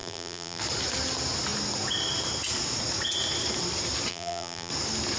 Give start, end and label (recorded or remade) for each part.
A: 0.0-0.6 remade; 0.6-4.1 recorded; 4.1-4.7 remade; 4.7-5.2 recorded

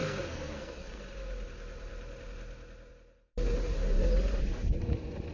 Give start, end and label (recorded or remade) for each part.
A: 0.0-1.0 remade; 1.0-5.3 recorded

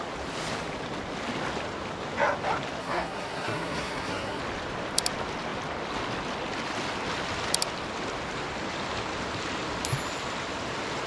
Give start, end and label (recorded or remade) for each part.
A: 0.0-2.8 recorded; 2.8-4.4 remade; 4.4-11.1 recorded